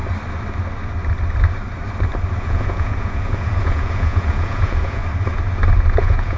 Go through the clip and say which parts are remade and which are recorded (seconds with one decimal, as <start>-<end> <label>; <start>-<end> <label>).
0.0-2.4 recorded; 2.4-5.0 remade; 5.0-5.9 recorded; 5.9-6.4 remade